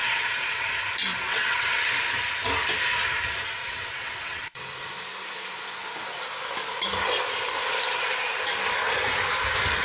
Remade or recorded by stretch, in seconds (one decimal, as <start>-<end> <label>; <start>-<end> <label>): 0.0-0.7 remade; 0.7-1.1 recorded; 1.1-1.9 remade; 1.9-3.6 recorded; 3.6-4.6 remade; 4.6-9.8 recorded